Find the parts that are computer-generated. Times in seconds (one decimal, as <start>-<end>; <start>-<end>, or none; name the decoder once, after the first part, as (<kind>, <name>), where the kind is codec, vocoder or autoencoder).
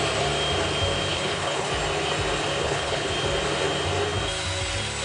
1.1-1.7 (codec, HILCodec); 2.6-3.1